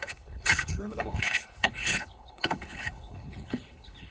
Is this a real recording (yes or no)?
no